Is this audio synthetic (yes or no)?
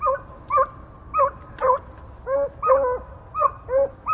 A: no